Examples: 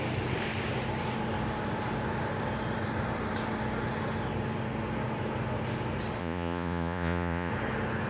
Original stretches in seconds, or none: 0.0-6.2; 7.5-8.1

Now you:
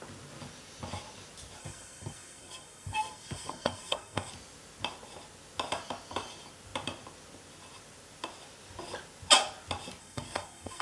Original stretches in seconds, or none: 0.0-1.6; 4.3-10.0

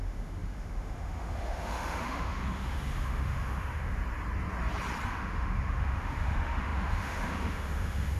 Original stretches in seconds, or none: 4.0-5.1

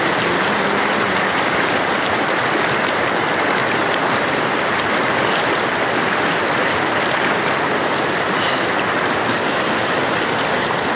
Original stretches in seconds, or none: 0.0-11.0

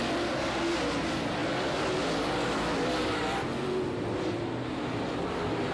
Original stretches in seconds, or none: 0.0-5.7

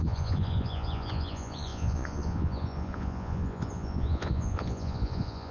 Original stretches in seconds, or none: none

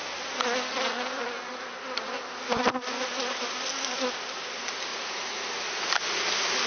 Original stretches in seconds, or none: 0.0-4.9; 5.4-6.7